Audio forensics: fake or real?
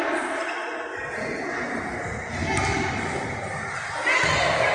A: real